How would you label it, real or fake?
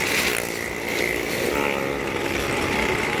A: real